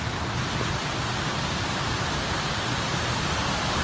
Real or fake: real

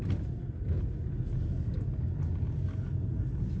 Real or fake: real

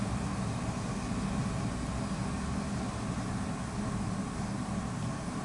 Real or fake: real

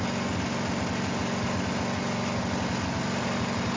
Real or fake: real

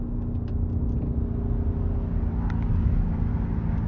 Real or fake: real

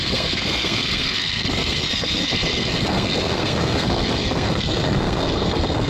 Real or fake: fake